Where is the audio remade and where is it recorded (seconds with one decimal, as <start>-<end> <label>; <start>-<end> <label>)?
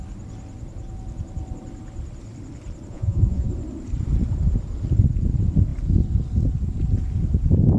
0.0-2.9 recorded; 2.9-3.5 remade; 3.5-7.8 recorded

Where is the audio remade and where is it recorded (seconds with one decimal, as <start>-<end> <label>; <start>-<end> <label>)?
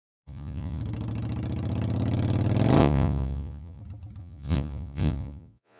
0.0-0.8 remade; 0.8-2.8 recorded; 2.8-3.8 remade; 3.8-4.2 recorded; 4.2-5.8 remade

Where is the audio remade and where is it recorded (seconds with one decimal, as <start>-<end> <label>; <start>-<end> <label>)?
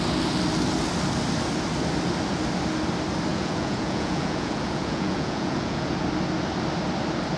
0.0-3.3 recorded; 3.3-5.9 remade; 5.9-7.4 recorded